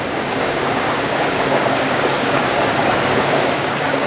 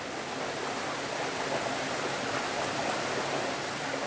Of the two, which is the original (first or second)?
second